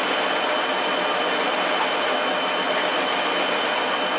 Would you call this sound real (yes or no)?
yes